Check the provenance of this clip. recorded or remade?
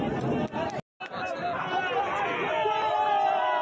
recorded